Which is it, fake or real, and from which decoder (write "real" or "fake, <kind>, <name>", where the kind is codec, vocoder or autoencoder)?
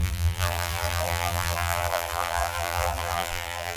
fake, vocoder, BigVGAN v2